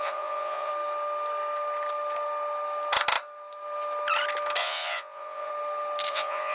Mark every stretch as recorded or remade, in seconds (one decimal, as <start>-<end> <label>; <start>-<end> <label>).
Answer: 0.0-0.7 remade; 0.7-4.6 recorded; 4.6-5.5 remade; 5.5-6.1 recorded; 6.1-6.5 remade